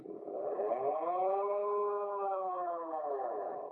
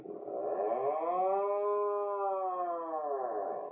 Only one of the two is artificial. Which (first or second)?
first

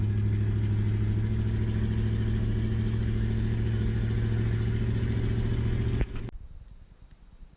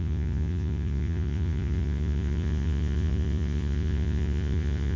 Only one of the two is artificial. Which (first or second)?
second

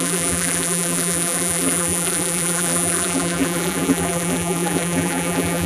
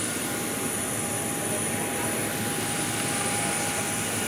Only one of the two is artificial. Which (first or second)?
first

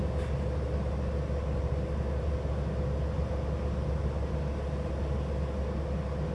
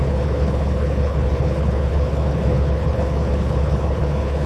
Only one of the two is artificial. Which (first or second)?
second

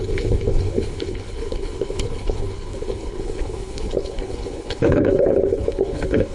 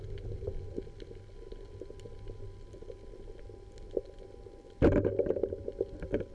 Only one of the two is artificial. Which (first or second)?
first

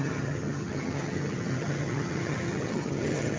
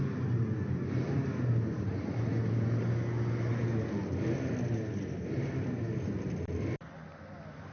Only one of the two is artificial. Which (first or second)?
first